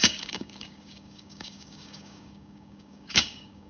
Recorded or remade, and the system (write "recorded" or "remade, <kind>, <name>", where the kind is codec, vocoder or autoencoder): remade, codec, DAC